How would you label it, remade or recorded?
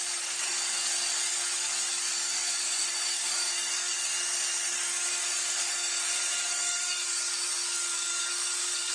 remade